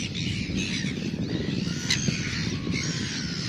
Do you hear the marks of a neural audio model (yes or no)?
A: no